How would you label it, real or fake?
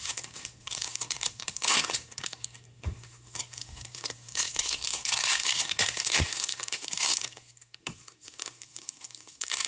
fake